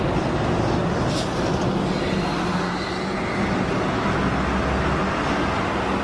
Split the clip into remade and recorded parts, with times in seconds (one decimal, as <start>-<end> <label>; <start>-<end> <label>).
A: 0.0-6.0 recorded